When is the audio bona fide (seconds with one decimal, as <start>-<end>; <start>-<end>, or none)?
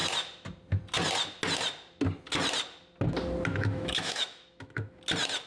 0.0-3.5; 5.0-5.5